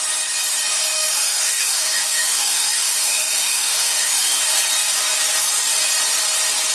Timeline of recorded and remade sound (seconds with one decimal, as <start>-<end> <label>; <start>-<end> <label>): 0.0-0.7 recorded; 0.7-4.4 remade; 4.4-6.7 recorded